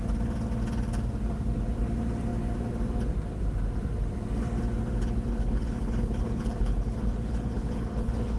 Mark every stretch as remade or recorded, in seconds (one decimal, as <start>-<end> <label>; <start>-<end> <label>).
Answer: 0.0-5.3 recorded; 5.3-8.4 remade